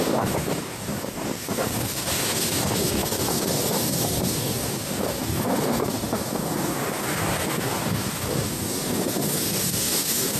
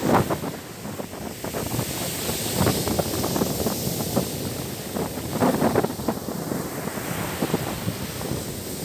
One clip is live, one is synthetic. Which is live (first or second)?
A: second